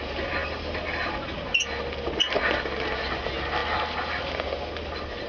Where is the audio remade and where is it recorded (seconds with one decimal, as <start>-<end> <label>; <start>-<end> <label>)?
0.0-5.3 recorded